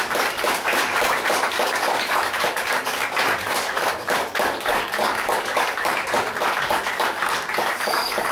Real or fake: fake